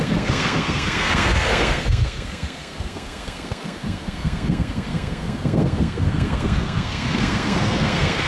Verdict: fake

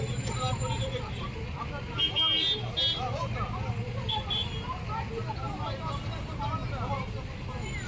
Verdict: real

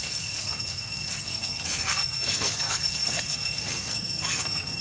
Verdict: fake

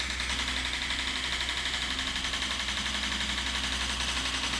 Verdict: real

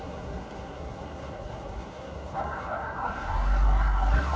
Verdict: fake